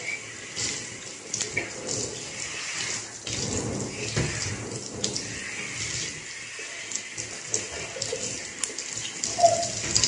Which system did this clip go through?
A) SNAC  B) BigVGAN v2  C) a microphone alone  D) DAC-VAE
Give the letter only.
C